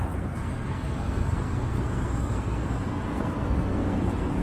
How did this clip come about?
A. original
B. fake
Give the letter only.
B